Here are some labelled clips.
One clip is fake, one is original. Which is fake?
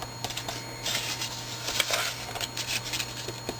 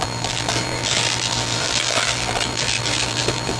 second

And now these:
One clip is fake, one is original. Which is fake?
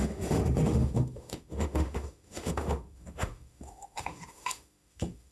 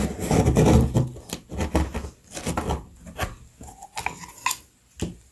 first